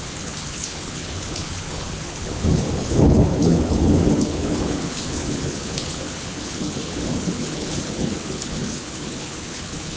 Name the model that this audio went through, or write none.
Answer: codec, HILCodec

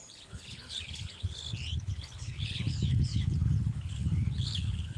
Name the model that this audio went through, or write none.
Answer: codec, HILCodec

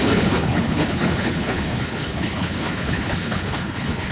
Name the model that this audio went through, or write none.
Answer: codec, HILCodec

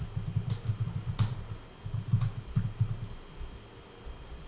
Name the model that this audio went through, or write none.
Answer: none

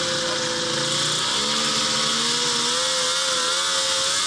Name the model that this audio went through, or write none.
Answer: none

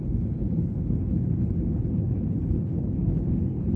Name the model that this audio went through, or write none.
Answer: codec, HILCodec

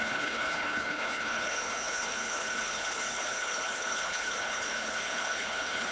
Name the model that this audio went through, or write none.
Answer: codec, HILCodec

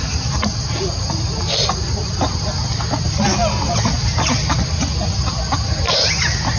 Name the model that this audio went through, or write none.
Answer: none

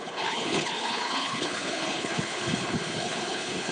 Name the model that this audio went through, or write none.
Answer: codec, HILCodec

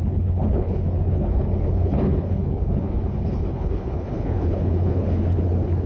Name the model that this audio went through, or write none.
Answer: codec, HILCodec